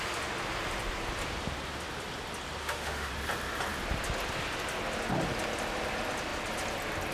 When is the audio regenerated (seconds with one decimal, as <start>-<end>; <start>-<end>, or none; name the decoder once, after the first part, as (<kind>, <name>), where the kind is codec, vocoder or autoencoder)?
2.6-3.1 (autoencoder, DAC-VAE)